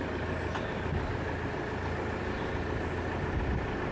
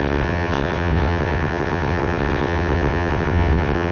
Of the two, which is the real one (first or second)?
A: first